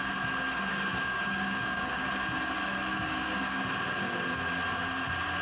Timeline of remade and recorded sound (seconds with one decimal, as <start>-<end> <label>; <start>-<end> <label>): 0.0-0.7 recorded; 0.7-2.1 remade; 2.1-2.9 recorded; 2.9-3.6 remade; 3.6-5.4 recorded